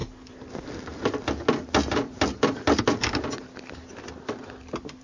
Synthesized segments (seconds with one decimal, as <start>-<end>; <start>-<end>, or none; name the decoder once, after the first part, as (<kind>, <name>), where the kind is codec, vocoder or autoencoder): none